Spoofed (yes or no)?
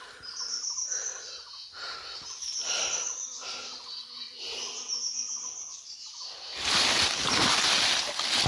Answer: no